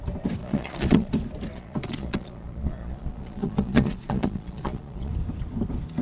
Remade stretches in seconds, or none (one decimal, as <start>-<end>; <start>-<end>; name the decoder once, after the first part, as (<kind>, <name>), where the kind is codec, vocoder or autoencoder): 0.4-1.1 (vocoder, Vocos); 1.5-5.1